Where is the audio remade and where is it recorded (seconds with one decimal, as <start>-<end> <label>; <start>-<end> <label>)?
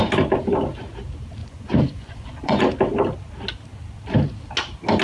0.0-1.4 recorded; 1.4-2.6 remade; 2.6-5.0 recorded